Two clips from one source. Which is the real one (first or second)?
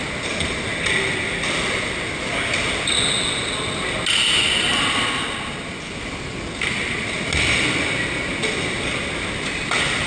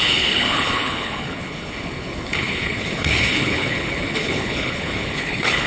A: first